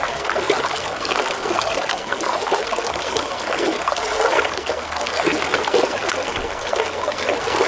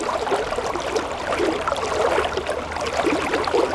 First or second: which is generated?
first